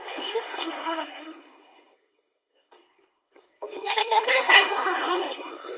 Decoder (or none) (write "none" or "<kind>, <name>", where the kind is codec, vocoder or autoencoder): codec, SNAC